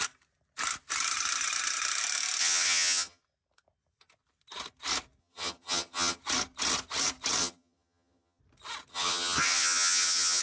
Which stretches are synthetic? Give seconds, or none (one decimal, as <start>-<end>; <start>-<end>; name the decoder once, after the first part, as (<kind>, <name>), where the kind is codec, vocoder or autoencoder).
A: 2.4-3.2 (vocoder, HiFi-GAN); 5.2-6.2; 7.4-8.4; 8.9-10.4